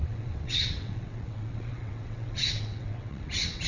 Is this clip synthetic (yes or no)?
yes